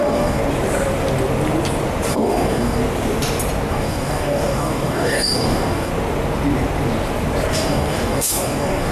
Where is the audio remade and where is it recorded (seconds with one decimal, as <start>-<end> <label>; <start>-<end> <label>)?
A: 0.0-0.4 remade; 0.4-2.1 recorded; 2.1-2.8 remade; 2.8-3.7 recorded; 3.7-5.9 remade; 5.9-7.5 recorded; 7.5-8.9 remade